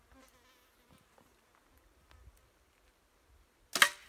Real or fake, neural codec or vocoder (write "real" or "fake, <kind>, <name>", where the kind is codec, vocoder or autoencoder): real